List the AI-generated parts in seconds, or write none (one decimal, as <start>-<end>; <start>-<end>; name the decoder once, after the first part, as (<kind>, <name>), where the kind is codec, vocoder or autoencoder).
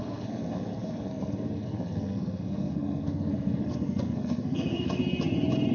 0.0-5.0 (codec, SNAC)